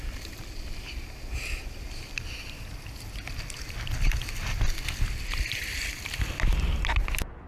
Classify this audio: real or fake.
real